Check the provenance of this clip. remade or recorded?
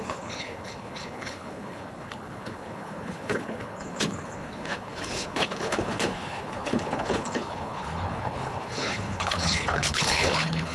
remade